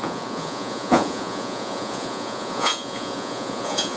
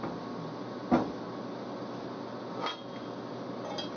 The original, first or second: second